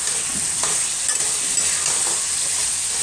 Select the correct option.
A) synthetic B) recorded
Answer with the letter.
B